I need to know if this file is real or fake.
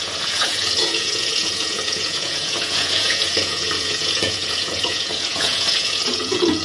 fake